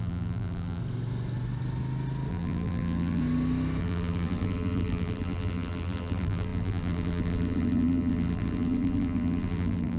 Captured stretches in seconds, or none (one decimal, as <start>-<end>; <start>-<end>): 0.8-2.3; 3.2-3.8